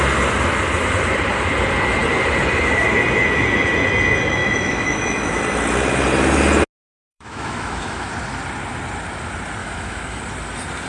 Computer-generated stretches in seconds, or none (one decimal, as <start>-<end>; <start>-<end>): 4.4-5.4; 7.0-8.1; 9.6-10.2